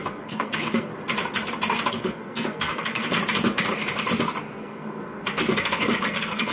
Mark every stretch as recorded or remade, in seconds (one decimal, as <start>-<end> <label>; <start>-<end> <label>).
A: 0.0-0.9 remade; 0.9-1.9 recorded; 1.9-3.2 remade; 3.2-4.4 recorded; 4.4-6.5 remade

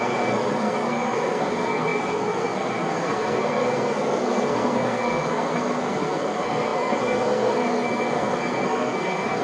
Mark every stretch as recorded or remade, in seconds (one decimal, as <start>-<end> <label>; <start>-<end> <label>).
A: 0.0-9.4 remade